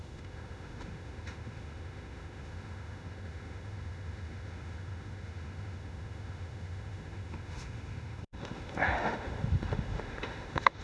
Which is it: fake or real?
fake